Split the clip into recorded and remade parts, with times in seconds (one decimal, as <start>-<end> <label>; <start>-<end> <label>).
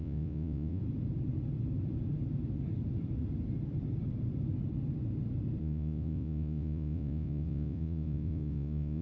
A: 0.0-0.8 remade; 0.8-5.6 recorded; 5.6-9.0 remade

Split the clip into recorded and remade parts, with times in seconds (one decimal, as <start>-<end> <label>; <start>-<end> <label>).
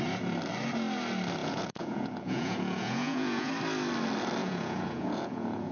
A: 0.0-1.4 recorded; 1.4-3.5 remade; 3.5-4.4 recorded; 4.4-5.7 remade